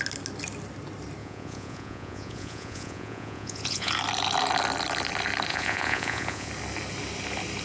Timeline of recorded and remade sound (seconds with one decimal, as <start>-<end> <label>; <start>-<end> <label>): 0.0-1.2 recorded; 1.2-3.9 remade; 3.9-5.5 recorded; 5.5-6.5 remade; 6.5-7.6 recorded